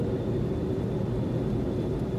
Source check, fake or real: real